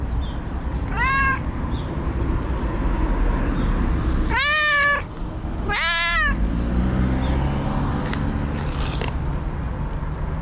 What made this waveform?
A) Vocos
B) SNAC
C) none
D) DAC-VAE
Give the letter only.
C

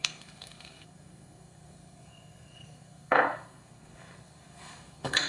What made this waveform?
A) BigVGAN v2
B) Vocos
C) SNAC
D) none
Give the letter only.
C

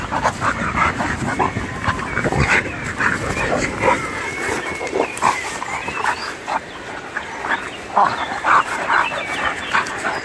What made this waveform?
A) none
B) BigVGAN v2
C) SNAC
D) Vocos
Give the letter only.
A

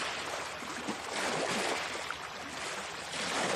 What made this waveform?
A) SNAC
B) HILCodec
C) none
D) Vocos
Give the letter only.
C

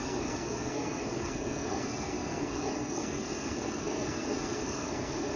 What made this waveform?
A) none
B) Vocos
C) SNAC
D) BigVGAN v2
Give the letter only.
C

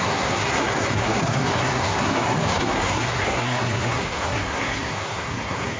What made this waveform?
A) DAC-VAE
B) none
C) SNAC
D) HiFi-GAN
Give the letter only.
C